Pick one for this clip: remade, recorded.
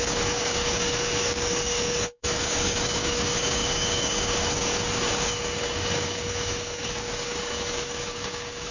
remade